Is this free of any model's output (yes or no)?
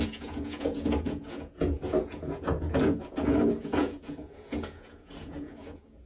no